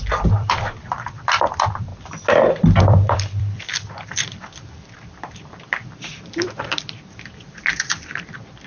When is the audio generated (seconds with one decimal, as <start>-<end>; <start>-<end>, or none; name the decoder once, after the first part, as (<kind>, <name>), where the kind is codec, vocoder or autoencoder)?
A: 0.0-1.9 (vocoder, BigVGAN v2); 2.8-8.7